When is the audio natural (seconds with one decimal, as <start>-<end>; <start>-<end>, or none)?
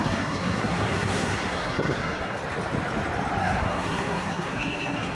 2.4-3.4